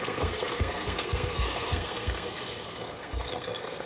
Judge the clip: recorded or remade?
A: remade